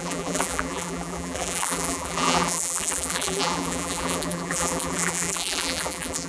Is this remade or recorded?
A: remade